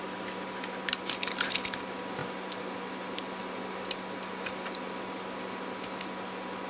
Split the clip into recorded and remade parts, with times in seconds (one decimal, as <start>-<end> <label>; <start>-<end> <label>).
0.0-6.7 recorded